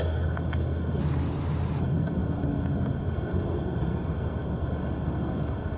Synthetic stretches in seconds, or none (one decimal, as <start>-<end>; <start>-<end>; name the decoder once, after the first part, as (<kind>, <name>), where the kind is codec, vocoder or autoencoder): 0.0-1.0 (codec, SNAC); 1.8-5.8